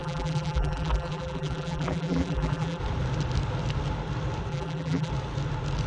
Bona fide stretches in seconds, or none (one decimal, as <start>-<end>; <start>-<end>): 2.8-4.5; 5.1-5.9